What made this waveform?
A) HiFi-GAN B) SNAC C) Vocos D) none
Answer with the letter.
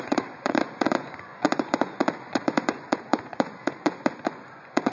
C